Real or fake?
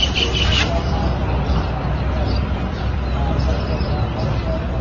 fake